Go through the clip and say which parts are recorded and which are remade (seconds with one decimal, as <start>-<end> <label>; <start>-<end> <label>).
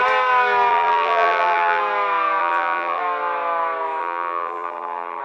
0.0-0.7 recorded; 0.7-1.8 remade; 1.8-2.4 recorded; 2.4-3.0 remade; 3.0-4.0 recorded; 4.0-5.2 remade